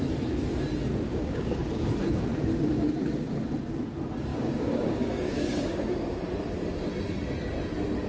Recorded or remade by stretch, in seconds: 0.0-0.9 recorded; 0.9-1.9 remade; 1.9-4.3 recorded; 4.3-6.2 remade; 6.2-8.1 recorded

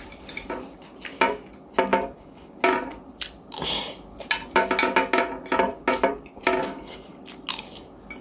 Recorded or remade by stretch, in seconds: 0.0-1.9 recorded; 1.9-2.6 remade; 2.6-6.6 recorded; 6.6-7.1 remade; 7.1-8.2 recorded

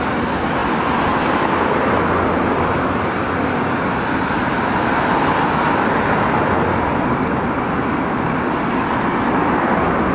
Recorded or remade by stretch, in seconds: 0.0-10.1 recorded

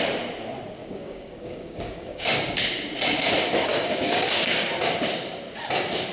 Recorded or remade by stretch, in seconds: 0.0-0.8 recorded; 0.8-2.6 remade; 2.6-3.7 recorded; 3.7-4.7 remade; 4.7-6.1 recorded

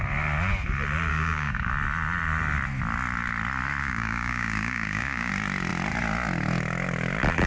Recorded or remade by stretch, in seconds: 0.0-1.1 recorded; 1.1-1.7 remade; 1.7-3.8 recorded; 3.8-5.3 remade; 5.3-7.5 recorded

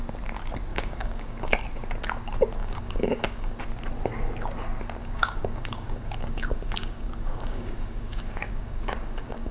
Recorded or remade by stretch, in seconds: 0.0-0.7 recorded; 0.7-1.5 remade; 1.5-2.6 recorded; 2.6-3.6 remade; 3.6-5.0 recorded; 5.0-9.5 remade

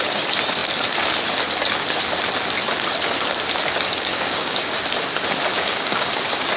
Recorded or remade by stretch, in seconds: 0.0-4.1 recorded; 4.1-4.8 remade; 4.8-5.5 recorded; 5.5-6.1 remade; 6.1-6.6 recorded

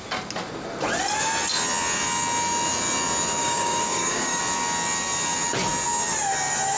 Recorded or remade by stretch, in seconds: 0.0-3.4 recorded; 3.4-4.4 remade; 4.4-6.8 recorded